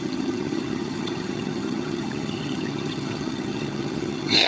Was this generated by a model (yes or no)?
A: yes